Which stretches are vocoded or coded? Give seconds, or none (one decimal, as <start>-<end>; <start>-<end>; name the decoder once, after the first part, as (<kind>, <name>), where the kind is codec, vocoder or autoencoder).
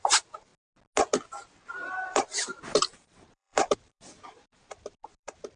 0.0-0.5 (vocoder, BigVGAN v2); 1.9-5.6